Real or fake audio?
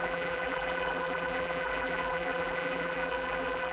fake